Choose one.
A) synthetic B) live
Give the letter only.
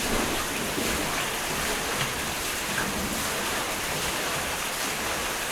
B